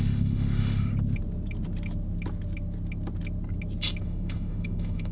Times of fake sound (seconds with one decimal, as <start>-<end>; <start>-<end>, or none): 0.0-0.9; 4.0-5.1